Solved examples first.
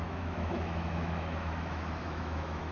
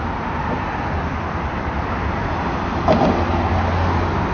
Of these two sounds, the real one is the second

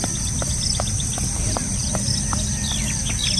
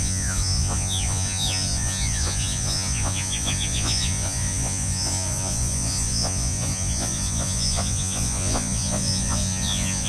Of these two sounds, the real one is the first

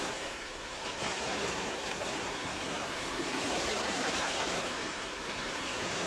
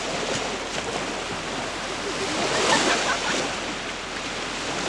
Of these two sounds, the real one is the second